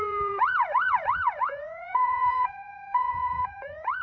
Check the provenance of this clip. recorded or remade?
remade